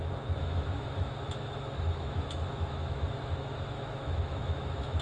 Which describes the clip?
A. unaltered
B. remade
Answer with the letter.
B